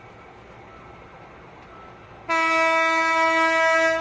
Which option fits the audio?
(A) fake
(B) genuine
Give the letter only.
B